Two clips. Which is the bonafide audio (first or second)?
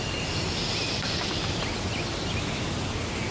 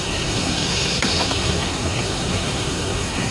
first